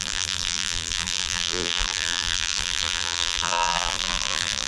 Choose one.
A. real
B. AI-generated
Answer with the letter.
B